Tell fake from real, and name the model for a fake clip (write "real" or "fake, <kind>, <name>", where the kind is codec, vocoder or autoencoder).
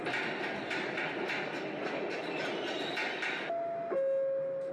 real